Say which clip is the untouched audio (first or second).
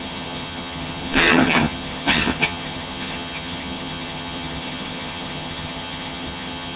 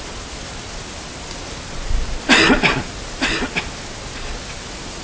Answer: second